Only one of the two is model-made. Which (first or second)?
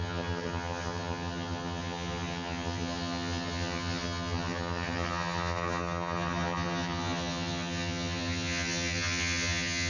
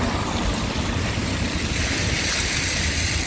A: first